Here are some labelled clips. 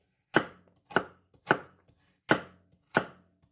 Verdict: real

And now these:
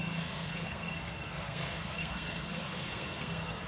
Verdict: fake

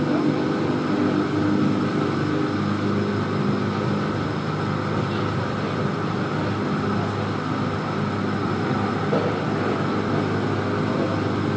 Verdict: real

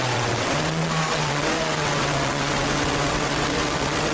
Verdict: fake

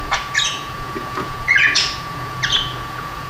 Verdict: fake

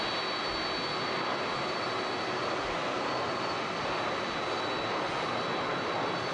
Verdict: real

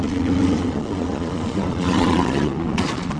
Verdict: fake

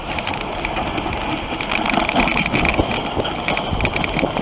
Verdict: real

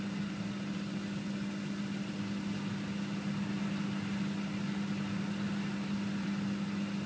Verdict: real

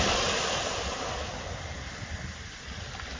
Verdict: real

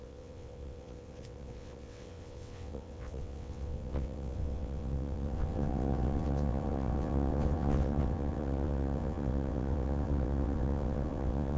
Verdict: fake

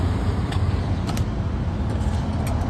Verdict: real